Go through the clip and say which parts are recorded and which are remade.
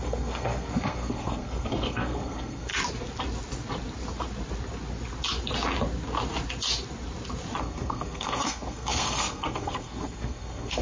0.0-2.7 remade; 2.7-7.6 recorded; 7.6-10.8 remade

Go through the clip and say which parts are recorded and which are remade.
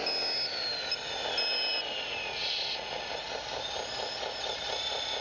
0.0-5.2 recorded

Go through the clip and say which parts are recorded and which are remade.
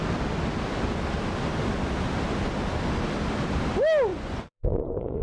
0.0-4.1 recorded; 4.1-5.2 remade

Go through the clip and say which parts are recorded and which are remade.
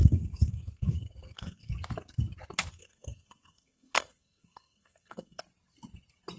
0.0-1.7 remade; 1.7-2.7 recorded; 2.7-5.4 remade; 5.4-6.4 recorded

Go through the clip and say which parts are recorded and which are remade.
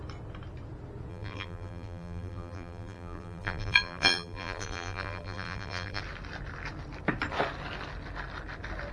0.0-1.1 recorded; 1.1-6.0 remade; 6.0-8.9 recorded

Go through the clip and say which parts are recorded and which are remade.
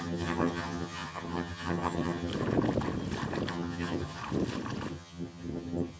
0.0-2.3 remade; 2.3-3.5 recorded; 3.5-4.2 remade; 4.2-4.9 recorded; 4.9-6.0 remade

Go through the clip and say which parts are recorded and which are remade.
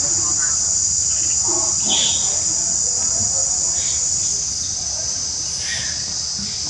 0.0-6.7 recorded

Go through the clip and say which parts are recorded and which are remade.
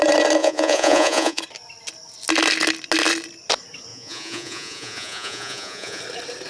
0.0-0.4 recorded; 0.4-1.4 remade; 1.4-3.9 recorded; 3.9-6.0 remade; 6.0-6.5 recorded